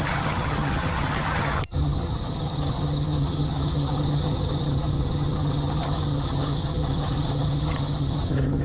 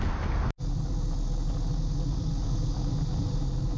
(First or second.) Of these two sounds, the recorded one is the second